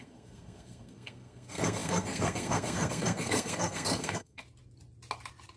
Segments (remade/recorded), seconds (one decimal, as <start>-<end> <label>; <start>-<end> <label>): 0.0-4.4 remade; 4.4-5.6 recorded